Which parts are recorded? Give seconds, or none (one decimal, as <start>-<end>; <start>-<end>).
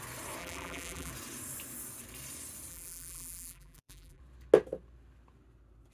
0.0-0.4; 1.1-2.7; 4.2-5.9